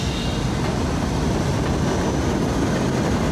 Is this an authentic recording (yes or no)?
yes